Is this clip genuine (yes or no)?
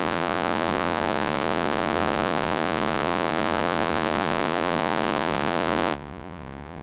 no